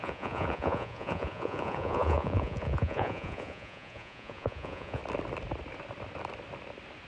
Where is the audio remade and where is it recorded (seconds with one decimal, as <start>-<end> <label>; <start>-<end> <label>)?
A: 0.0-5.0 remade; 5.0-7.1 recorded